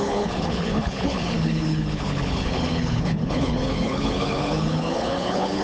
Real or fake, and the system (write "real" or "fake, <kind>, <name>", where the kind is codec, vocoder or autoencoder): fake, codec, HILCodec